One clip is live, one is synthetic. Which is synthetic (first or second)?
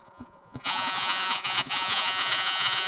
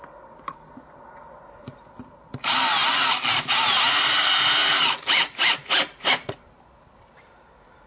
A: first